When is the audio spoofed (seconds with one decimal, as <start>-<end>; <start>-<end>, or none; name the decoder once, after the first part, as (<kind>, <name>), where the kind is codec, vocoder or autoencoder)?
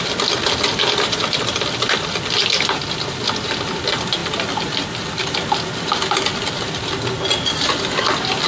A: none